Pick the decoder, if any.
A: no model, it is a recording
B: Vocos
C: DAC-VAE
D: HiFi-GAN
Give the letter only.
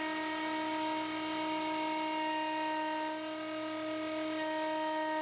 A